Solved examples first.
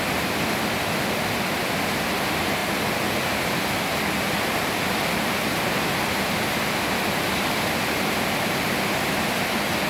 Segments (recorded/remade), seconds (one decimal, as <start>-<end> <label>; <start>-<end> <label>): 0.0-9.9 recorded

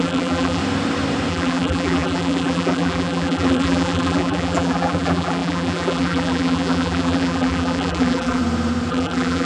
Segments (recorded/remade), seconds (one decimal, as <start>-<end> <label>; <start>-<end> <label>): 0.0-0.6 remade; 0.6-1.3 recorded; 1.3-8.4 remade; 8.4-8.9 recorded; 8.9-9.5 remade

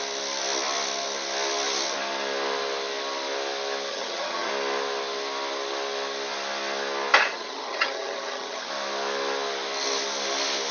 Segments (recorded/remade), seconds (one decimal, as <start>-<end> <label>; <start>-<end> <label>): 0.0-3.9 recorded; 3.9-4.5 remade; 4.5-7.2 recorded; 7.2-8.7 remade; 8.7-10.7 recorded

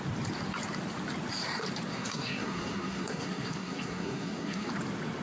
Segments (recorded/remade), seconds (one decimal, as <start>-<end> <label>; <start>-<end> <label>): 0.0-1.9 recorded; 1.9-4.7 remade; 4.7-5.2 recorded

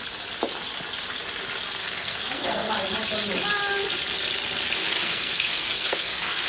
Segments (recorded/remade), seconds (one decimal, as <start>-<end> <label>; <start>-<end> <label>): 0.0-1.8 recorded; 1.8-2.7 remade; 2.7-4.8 recorded; 4.8-6.5 remade

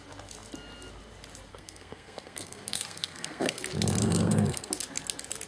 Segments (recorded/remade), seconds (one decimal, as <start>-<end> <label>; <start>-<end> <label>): 0.0-1.5 recorded; 1.5-3.6 remade; 3.6-4.0 recorded; 4.0-4.7 remade; 4.7-5.5 recorded

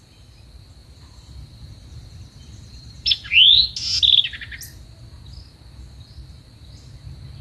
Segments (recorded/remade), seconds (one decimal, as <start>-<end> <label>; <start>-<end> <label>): 0.0-0.8 recorded; 0.8-3.6 remade; 3.6-7.4 recorded

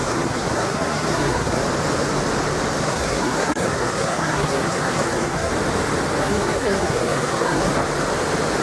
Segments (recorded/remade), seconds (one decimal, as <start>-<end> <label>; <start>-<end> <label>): 0.0-1.6 remade; 1.6-2.8 recorded; 2.8-5.5 remade; 5.5-6.2 recorded; 6.2-7.7 remade; 7.7-8.6 recorded